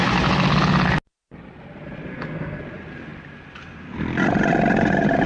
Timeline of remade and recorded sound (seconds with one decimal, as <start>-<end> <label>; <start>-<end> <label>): 0.0-2.1 recorded; 2.1-2.6 remade; 2.6-5.3 recorded